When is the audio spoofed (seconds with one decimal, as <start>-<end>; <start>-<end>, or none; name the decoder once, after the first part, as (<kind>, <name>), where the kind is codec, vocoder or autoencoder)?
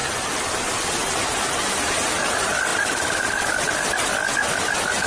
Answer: 0.0-0.6 (vocoder, BigVGAN v2); 2.7-3.7